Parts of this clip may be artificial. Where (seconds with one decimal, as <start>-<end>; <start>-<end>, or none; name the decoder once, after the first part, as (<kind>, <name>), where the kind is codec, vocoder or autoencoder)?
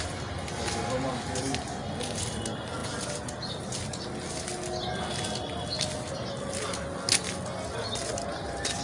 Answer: none